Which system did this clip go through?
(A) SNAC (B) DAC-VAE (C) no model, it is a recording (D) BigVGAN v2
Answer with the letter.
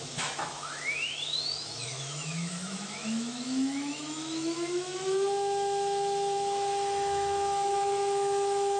B